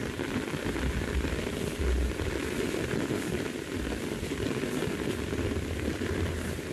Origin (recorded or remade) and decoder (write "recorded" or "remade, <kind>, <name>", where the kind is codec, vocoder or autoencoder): remade, vocoder, BigVGAN v2